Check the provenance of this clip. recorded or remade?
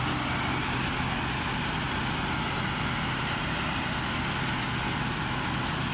recorded